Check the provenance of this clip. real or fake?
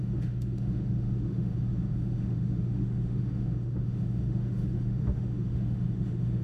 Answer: fake